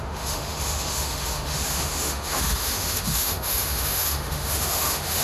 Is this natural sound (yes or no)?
no